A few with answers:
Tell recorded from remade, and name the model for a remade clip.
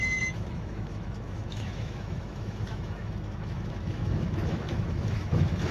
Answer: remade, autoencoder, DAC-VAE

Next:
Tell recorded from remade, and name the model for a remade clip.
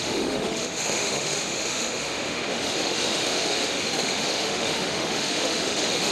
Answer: remade, autoencoder, DAC-VAE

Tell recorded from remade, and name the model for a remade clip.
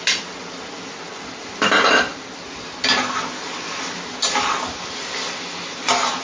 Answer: recorded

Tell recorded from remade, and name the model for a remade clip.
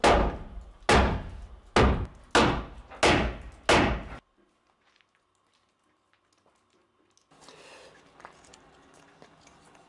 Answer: recorded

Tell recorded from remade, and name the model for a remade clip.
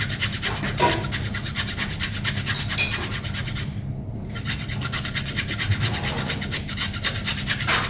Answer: recorded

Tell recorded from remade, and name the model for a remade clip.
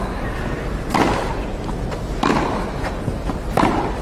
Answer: recorded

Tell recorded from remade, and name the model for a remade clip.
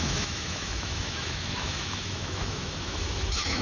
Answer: remade, autoencoder, DAC-VAE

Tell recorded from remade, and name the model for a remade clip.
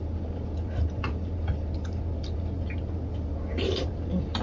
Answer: recorded